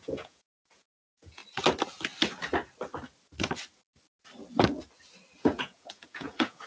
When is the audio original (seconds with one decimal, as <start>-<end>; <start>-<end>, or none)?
1.4-5.4